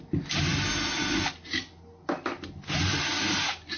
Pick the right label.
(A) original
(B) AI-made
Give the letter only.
A